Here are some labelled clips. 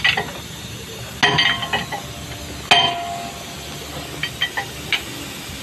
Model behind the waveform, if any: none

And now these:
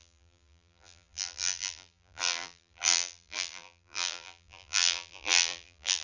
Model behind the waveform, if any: vocoder, BigVGAN v2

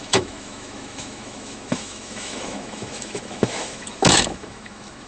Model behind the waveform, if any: autoencoder, DAC-VAE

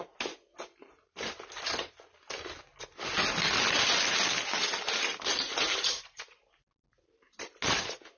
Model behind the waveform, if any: none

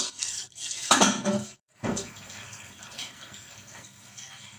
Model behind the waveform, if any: codec, SNAC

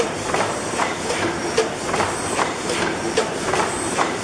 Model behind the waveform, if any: vocoder, BigVGAN v2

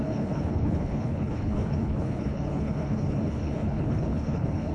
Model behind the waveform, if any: codec, HILCodec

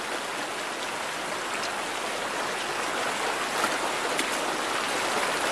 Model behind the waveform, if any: none